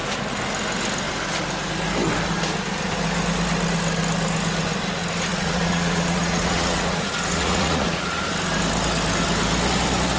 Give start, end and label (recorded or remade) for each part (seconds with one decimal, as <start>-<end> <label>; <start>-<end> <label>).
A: 0.0-5.3 recorded; 5.3-8.2 remade; 8.2-10.2 recorded